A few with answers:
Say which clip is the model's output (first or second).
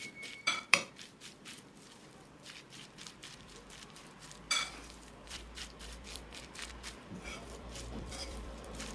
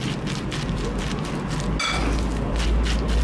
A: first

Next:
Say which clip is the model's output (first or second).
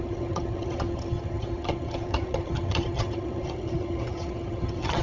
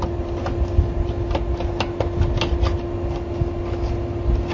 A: first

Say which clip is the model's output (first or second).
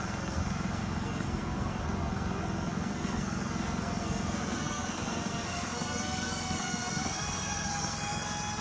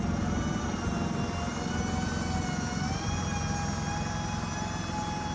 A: first